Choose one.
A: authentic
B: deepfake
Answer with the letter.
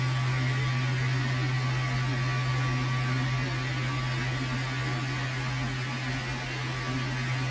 A